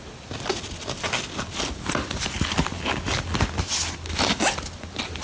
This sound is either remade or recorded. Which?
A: recorded